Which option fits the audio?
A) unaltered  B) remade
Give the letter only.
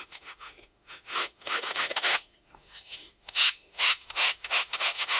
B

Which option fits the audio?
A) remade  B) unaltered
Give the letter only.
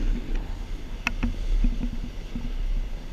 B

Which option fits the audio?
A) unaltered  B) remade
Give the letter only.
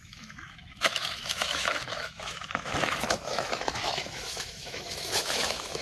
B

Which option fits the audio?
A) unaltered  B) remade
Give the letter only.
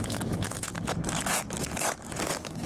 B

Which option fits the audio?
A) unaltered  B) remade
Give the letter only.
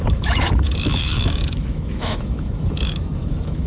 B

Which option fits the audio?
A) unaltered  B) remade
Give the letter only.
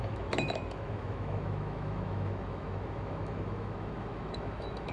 B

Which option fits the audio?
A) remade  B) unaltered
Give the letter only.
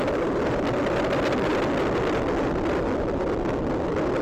B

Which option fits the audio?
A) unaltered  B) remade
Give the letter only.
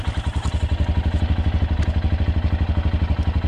A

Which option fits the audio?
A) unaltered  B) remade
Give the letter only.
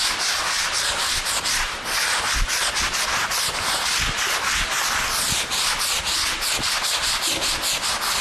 A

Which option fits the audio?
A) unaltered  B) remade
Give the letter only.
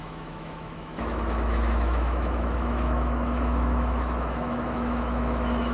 B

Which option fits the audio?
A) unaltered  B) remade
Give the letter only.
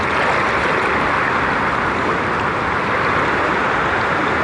A